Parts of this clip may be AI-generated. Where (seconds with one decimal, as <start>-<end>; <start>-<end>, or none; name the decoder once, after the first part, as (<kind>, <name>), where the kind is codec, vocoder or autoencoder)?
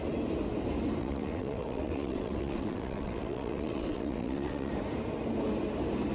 1.0-4.7 (vocoder, WaveNeXt)